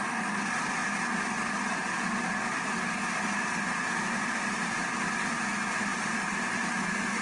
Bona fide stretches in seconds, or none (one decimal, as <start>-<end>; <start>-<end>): 0.0-5.9; 6.4-7.2